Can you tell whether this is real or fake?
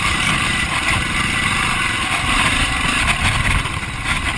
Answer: real